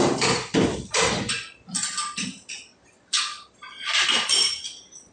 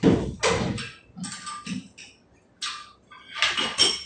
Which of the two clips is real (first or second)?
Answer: second